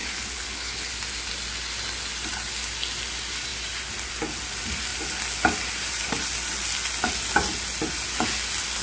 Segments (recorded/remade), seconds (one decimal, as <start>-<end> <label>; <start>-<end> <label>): 0.0-0.9 remade; 0.9-8.8 recorded